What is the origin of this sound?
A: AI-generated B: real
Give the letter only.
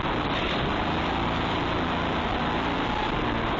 B